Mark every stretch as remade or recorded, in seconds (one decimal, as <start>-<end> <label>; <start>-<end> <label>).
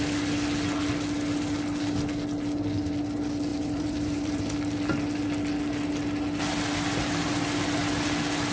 0.0-3.5 recorded; 3.5-4.5 remade; 4.5-8.5 recorded